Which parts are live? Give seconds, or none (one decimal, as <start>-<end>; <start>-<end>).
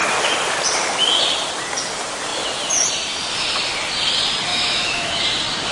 0.0-4.5; 5.2-5.7